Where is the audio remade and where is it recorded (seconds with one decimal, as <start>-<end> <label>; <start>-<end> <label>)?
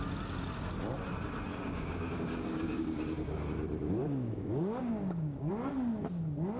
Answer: 0.0-1.5 recorded; 1.5-2.8 remade; 2.8-4.0 recorded; 4.0-5.5 remade; 5.5-6.6 recorded